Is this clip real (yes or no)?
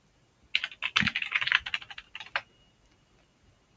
yes